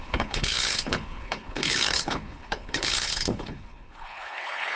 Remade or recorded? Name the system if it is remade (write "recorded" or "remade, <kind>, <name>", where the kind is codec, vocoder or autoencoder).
remade, codec, HILCodec